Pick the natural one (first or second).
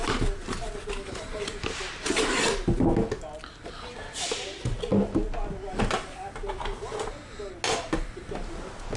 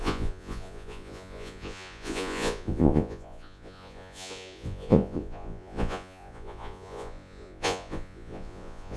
first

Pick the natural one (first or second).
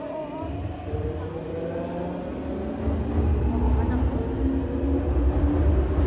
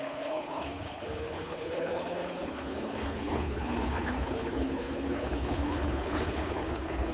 first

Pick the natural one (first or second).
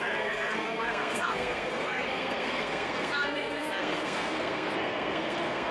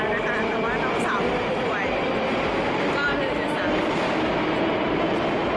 second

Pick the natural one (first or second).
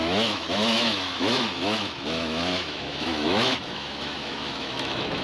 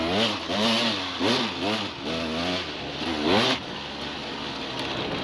second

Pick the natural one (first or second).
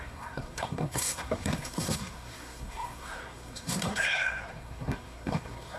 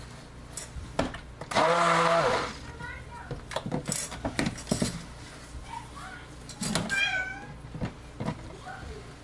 second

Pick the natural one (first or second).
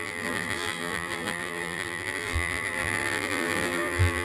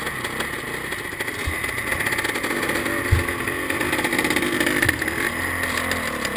second